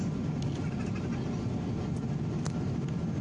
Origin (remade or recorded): recorded